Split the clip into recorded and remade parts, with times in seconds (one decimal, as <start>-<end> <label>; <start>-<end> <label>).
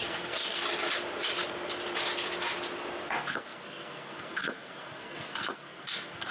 0.0-0.6 remade; 0.6-3.0 recorded; 3.0-6.3 remade